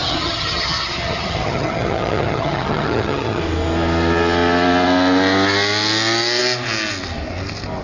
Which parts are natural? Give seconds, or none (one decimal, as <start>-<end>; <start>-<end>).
3.4-7.8